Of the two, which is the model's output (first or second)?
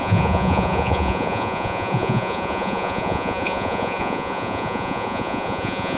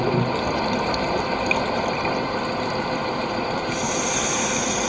first